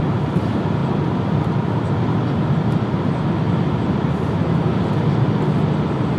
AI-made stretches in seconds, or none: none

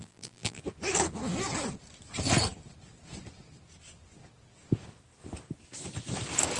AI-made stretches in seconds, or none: 0.0-0.6 (vocoder, BigVGAN v2)

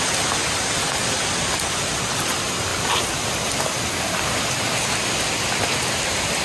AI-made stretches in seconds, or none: 1.0-1.5 (vocoder, BigVGAN v2); 2.7-3.9